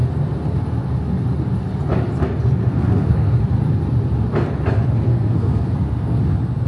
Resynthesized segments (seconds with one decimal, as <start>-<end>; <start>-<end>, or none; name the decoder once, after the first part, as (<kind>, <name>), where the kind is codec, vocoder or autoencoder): 2.6-3.4 (codec, SNAC); 5.1-6.2